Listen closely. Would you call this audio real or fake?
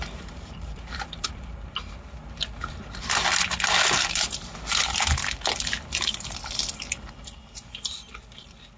fake